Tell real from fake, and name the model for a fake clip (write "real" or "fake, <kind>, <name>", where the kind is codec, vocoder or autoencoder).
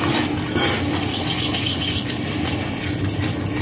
real